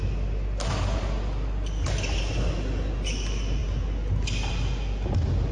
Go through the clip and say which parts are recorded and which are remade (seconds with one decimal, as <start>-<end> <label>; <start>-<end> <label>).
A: 0.0-5.5 recorded